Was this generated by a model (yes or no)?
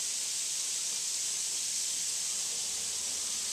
no